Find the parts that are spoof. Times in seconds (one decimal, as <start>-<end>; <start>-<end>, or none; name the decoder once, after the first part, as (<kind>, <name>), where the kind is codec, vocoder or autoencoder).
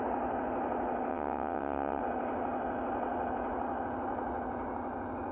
1.1-2.0 (vocoder, WaveNeXt)